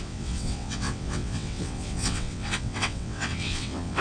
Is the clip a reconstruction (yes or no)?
yes